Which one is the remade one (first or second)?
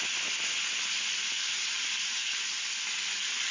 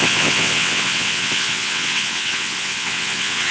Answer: second